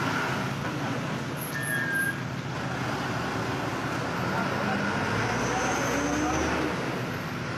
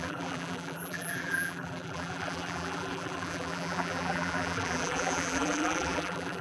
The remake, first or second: second